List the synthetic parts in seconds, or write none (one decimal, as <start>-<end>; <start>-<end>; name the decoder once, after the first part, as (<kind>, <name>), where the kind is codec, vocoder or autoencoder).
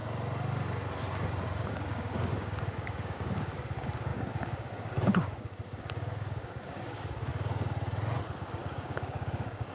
1.7-7.3 (codec, DAC); 8.3-9.7